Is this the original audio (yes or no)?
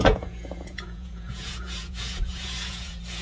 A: no